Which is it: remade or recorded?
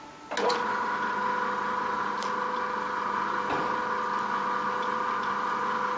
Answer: recorded